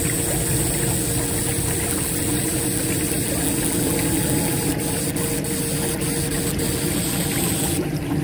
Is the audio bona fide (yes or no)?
yes